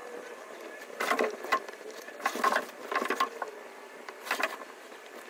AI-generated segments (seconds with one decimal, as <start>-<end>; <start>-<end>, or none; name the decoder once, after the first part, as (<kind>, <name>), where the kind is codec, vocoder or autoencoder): none